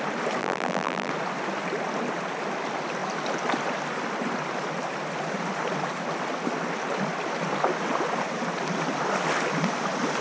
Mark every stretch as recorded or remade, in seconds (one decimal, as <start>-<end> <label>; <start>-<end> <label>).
0.0-0.4 recorded; 0.4-1.1 remade; 1.1-10.2 recorded